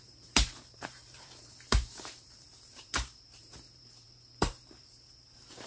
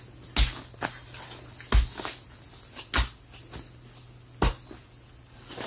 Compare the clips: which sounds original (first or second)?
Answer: second